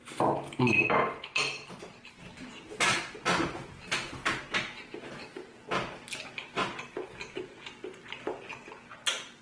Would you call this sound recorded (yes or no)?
yes